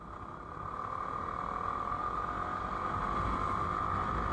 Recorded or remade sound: recorded